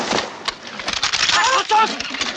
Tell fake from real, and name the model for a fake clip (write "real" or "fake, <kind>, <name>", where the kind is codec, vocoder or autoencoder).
real